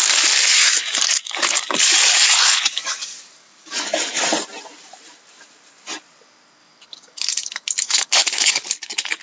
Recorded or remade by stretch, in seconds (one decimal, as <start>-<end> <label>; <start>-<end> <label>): 0.0-0.5 recorded; 0.5-4.2 remade; 4.2-6.6 recorded; 6.6-9.2 remade